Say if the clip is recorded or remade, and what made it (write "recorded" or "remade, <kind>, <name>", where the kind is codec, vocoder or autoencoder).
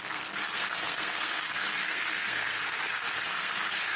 remade, codec, SNAC